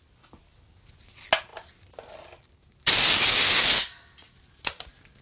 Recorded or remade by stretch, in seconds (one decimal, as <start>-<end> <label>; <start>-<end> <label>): 0.0-5.2 recorded